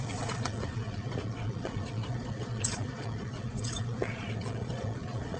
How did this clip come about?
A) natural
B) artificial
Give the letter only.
B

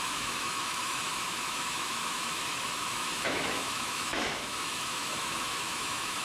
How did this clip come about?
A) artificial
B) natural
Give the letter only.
A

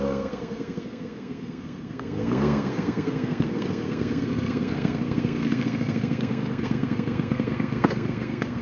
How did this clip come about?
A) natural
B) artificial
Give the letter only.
B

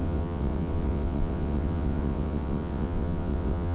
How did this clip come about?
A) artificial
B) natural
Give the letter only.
A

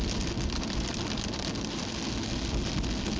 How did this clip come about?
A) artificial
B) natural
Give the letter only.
B